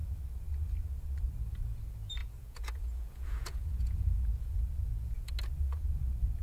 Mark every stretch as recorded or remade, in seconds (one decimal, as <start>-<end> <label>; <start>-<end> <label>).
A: 0.0-2.2 recorded; 2.2-5.3 remade; 5.3-6.4 recorded